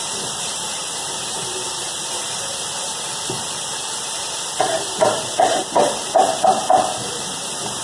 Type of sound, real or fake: fake